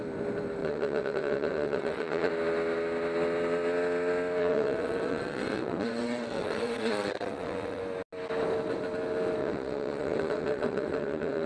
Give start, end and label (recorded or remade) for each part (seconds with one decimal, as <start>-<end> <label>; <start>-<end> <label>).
0.0-0.6 recorded; 0.6-2.3 remade; 2.3-4.4 recorded; 4.4-7.8 remade; 7.8-9.4 recorded; 9.4-11.5 remade